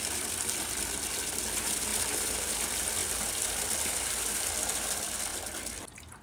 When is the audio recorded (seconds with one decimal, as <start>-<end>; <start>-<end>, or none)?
0.0-1.9; 2.5-6.2